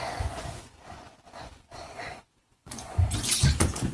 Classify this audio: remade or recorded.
remade